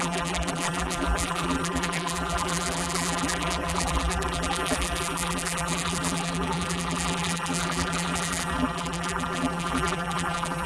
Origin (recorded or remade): remade